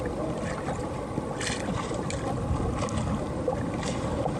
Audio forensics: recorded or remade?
recorded